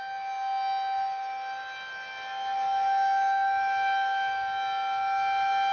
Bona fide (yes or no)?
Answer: yes